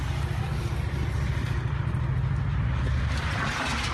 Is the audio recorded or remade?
recorded